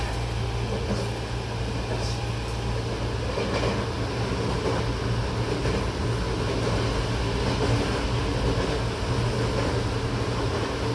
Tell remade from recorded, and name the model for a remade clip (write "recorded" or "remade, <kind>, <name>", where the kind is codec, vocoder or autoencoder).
recorded